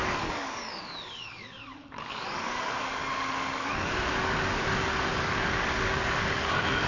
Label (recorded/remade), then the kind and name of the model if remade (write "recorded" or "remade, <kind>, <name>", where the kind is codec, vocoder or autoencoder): remade, codec, DAC